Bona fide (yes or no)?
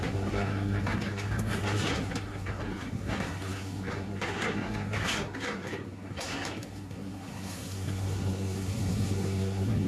no